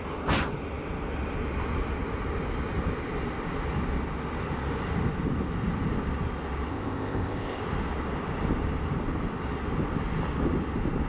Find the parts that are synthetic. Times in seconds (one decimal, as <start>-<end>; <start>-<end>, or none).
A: 6.7-7.6